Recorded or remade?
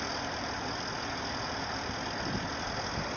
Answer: recorded